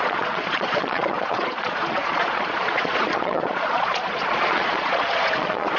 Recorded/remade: remade